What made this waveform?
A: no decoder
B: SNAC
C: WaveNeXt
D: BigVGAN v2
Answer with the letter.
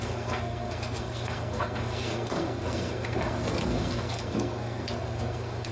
B